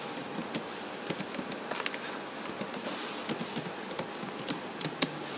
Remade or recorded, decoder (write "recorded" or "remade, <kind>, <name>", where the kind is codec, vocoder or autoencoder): recorded